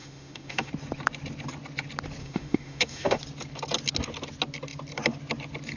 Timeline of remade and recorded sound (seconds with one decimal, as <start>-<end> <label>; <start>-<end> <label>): 0.0-0.7 remade; 0.7-2.2 recorded; 2.2-3.2 remade; 3.2-5.8 recorded